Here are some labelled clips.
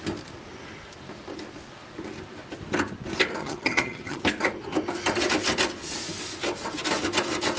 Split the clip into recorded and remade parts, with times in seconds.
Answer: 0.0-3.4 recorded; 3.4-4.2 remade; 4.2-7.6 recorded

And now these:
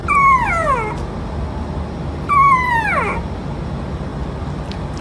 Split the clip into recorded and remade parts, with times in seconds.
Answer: 0.0-5.0 recorded

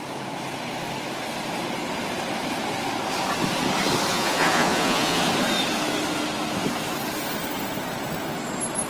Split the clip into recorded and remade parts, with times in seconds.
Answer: 0.0-4.1 recorded; 4.1-5.2 remade; 5.2-8.9 recorded

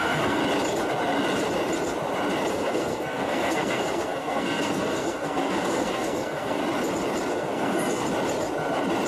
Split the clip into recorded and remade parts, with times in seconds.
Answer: 0.0-0.4 remade; 0.4-2.5 recorded; 2.5-6.6 remade; 6.6-7.3 recorded; 7.3-8.0 remade; 8.0-9.1 recorded

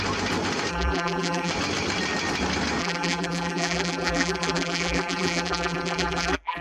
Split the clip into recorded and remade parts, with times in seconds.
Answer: 0.0-0.7 recorded; 0.7-1.5 remade; 1.5-2.8 recorded; 2.8-6.6 remade

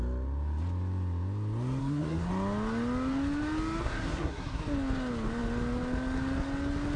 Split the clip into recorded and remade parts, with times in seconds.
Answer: 0.0-1.8 recorded; 1.8-2.3 remade; 2.3-3.8 recorded; 3.8-4.6 remade; 4.6-7.0 recorded